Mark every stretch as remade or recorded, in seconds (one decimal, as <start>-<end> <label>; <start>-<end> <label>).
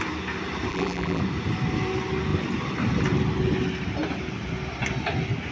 0.0-0.7 recorded; 0.7-1.2 remade; 1.2-5.5 recorded